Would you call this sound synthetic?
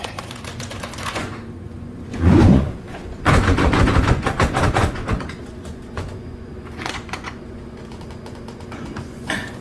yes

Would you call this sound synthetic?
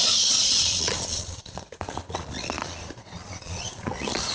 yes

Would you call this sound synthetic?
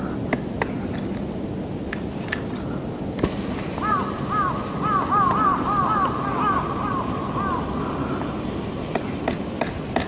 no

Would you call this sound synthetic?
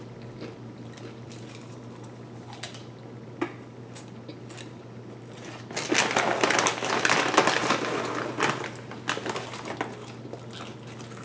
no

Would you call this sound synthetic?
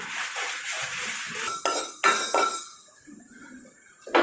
no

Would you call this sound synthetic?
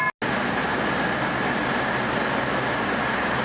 no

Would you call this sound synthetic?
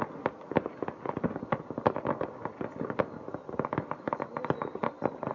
no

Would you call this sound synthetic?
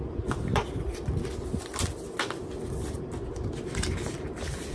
no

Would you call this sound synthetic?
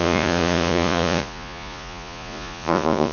yes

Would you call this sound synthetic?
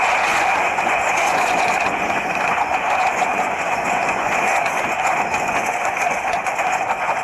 yes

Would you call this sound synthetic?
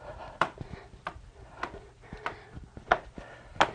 no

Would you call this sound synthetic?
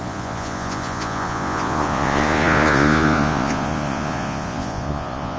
yes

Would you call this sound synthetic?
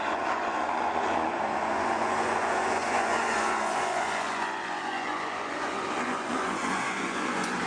yes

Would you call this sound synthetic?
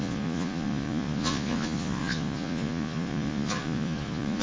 yes